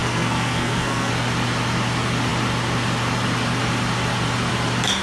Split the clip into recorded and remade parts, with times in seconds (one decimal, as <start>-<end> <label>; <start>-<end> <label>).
0.0-1.1 remade; 1.1-5.0 recorded